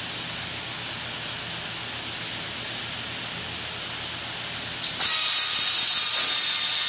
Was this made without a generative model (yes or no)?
yes